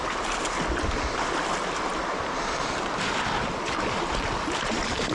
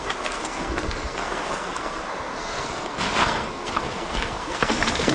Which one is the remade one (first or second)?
second